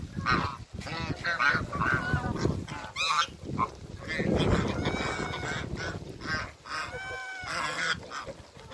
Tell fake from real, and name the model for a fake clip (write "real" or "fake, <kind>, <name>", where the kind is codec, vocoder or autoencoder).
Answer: real